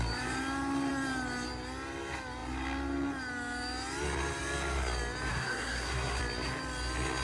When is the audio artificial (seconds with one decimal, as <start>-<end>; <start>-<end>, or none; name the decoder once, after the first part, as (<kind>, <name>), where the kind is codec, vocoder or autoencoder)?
5.3-6.2 (codec, SNAC)